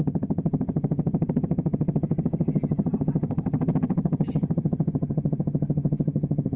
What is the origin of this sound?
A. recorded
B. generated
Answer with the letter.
B